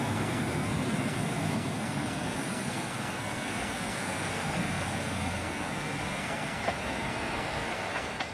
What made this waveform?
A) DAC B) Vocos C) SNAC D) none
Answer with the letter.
C